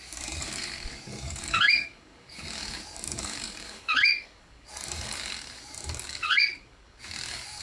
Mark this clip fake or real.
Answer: fake